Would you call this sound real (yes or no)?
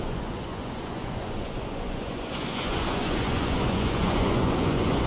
no